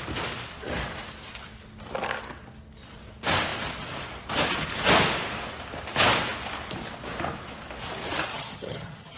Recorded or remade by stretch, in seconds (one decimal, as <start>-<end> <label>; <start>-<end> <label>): 0.0-8.3 recorded; 8.3-9.2 remade